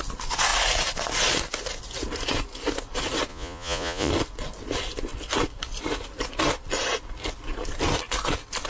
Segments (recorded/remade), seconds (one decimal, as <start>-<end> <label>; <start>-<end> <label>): 0.0-3.3 recorded; 3.3-4.1 remade; 4.1-8.7 recorded